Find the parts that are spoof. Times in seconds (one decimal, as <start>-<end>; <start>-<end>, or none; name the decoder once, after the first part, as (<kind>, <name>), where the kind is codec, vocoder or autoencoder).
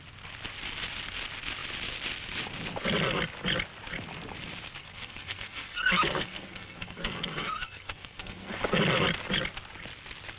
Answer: 4.8-8.8 (codec, SNAC)